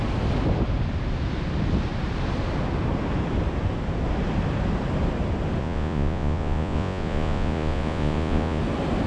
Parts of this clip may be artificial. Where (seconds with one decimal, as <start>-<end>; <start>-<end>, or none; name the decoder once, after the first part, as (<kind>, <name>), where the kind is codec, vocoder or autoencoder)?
5.6-8.6 (vocoder, Vocos)